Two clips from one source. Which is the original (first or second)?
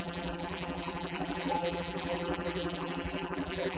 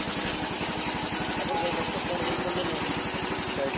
second